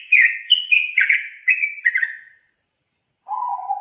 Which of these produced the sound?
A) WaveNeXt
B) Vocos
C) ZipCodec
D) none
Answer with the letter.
B